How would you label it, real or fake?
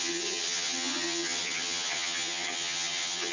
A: fake